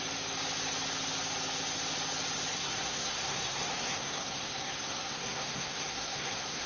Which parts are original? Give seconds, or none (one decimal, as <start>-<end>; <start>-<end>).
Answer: 0.0-2.5